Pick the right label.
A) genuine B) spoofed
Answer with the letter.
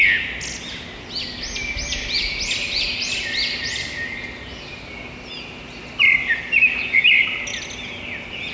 A